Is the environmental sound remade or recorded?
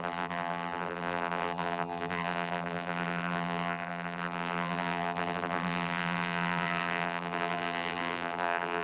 remade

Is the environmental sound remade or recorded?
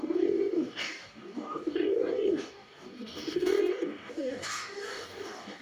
remade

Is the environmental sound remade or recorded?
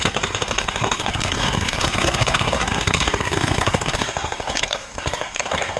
remade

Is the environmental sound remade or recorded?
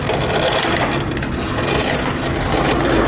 recorded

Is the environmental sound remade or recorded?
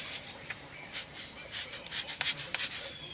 remade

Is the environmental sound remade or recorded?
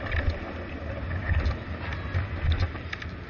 recorded